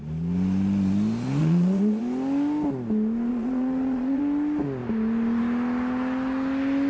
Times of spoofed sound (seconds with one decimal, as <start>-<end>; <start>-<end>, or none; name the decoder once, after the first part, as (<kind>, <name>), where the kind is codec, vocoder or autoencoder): 1.4-2.0 (vocoder, Vocos); 3.3-4.2